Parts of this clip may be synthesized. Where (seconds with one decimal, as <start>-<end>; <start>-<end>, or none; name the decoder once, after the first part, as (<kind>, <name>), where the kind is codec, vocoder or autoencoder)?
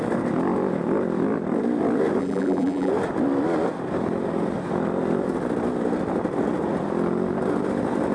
2.2-2.9 (vocoder, BigVGAN v2)